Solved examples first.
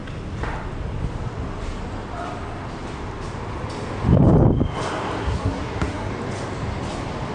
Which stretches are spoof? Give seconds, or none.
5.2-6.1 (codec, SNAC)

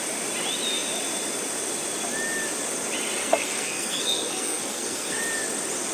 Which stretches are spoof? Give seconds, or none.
3.2-5.2 (codec, SNAC)

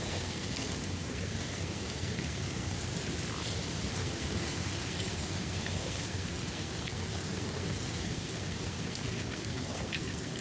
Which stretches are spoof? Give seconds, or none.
0.0-2.9 (codec, SNAC); 3.9-10.4

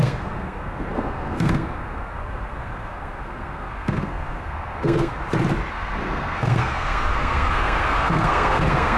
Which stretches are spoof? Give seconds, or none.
0.0-5.2 (codec, SNAC); 5.7-9.0

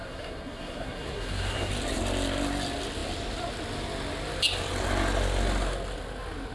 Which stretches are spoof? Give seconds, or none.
0.0-1.7 (codec, SNAC)

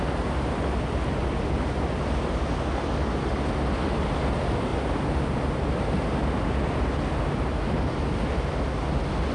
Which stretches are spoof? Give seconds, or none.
none

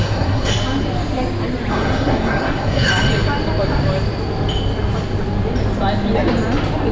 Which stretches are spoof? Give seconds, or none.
0.0-0.5 (codec, SNAC); 1.7-2.9

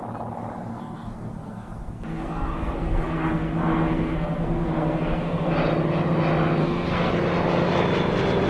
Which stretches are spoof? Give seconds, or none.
0.7-5.5 (codec, SNAC); 6.6-7.1